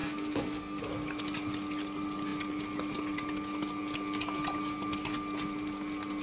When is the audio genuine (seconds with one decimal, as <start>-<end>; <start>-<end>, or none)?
0.8-6.2